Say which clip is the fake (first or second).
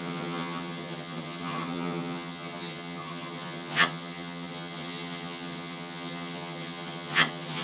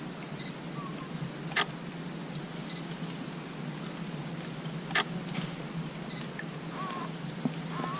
first